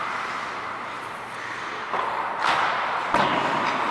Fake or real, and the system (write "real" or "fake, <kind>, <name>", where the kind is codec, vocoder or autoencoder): real